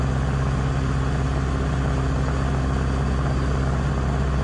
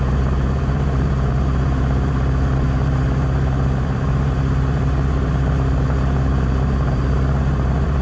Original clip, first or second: first